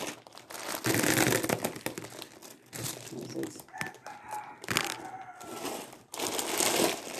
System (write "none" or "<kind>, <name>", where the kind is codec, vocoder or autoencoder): none